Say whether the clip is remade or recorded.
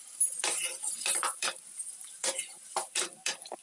remade